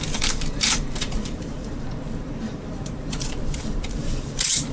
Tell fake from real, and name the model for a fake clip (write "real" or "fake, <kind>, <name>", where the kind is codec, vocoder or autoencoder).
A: fake, vocoder, BigVGAN v2